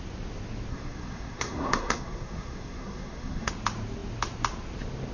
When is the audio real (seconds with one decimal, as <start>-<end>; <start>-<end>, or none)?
0.0-0.7; 3.5-5.1

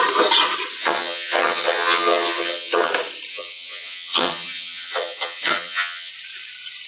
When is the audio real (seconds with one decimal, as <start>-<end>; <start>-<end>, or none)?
0.0-0.8; 2.9-3.3; 6.1-6.9

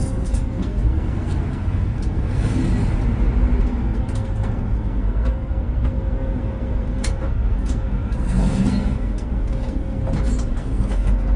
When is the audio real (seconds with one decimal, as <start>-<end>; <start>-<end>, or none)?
2.6-3.6; 10.0-10.5